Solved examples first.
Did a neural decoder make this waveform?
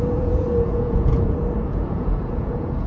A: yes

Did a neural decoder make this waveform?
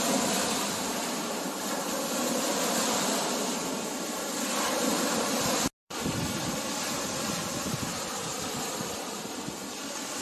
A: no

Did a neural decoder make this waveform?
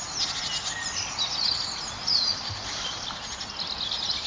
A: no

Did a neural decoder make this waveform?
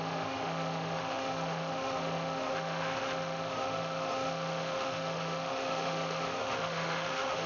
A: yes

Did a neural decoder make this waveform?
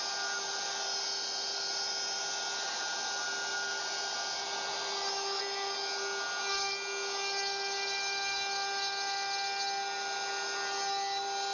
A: no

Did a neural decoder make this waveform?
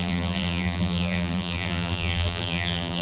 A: yes